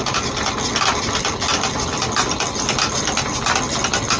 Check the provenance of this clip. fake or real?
real